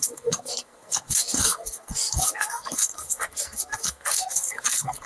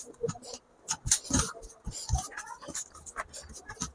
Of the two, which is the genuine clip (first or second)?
second